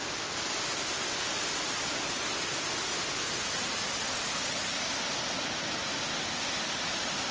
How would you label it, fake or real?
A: real